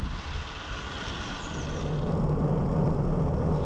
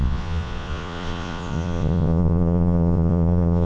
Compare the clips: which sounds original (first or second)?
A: first